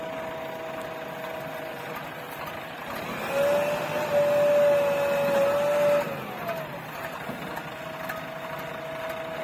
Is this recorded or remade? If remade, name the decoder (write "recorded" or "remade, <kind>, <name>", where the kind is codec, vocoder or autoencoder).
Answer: recorded